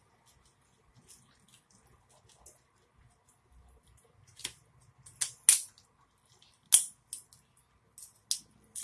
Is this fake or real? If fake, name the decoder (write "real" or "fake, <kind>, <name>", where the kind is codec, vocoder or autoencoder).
real